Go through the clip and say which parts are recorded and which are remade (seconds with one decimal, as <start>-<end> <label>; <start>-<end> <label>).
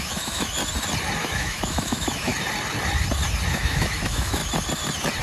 0.0-0.6 remade; 0.6-1.2 recorded; 1.2-2.3 remade; 2.3-3.5 recorded; 3.5-4.4 remade; 4.4-5.2 recorded